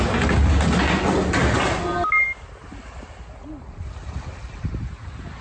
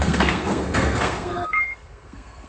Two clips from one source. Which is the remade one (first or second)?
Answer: second